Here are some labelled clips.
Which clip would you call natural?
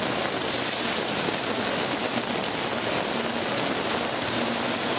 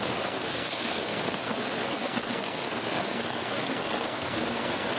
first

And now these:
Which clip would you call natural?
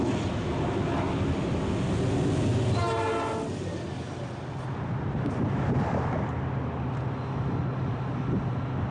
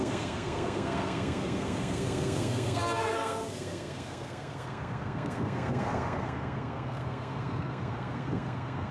first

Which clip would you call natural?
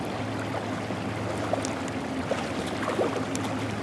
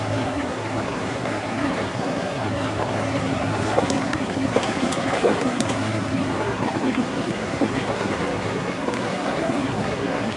first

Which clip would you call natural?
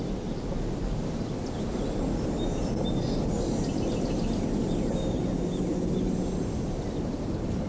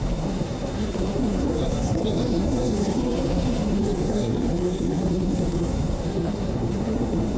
first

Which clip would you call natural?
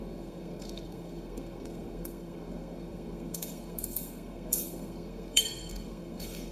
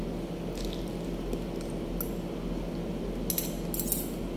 second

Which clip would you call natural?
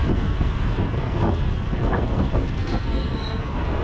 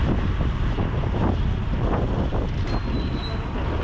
second